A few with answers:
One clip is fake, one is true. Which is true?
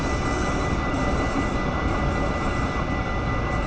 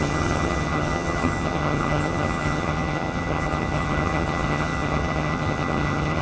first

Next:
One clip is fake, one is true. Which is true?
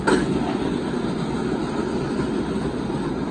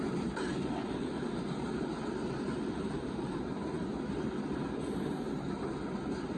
first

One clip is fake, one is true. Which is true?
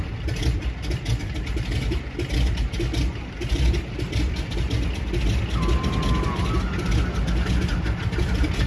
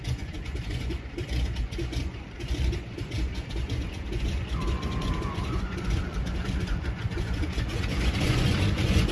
first